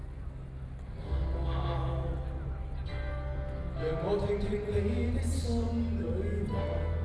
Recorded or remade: recorded